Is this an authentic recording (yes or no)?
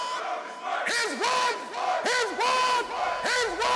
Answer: yes